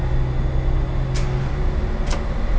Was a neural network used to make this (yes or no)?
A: no